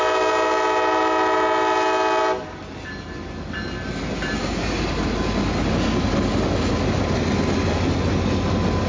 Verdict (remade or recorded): recorded